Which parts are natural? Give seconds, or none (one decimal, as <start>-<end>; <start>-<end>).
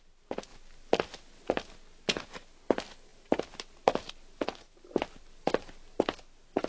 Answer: 0.0-6.7